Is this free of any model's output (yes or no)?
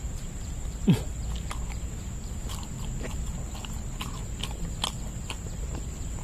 yes